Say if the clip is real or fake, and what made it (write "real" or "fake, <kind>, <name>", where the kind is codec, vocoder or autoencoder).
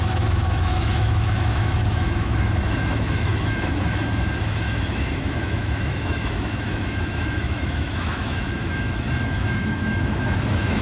fake, autoencoder, DAC-VAE